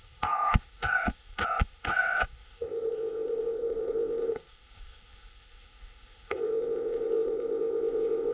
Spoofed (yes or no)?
yes